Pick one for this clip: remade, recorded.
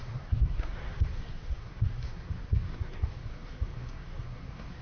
remade